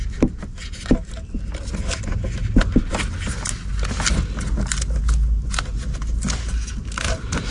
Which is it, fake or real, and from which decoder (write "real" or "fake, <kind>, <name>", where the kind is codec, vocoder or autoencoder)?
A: real